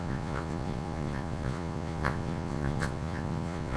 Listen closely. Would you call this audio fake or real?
fake